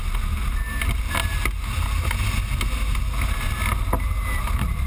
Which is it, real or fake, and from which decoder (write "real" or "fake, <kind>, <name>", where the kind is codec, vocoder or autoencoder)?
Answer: real